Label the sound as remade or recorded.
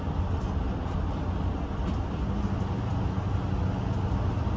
recorded